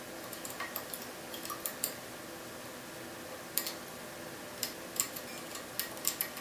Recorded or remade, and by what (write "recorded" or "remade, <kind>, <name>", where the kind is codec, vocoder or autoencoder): recorded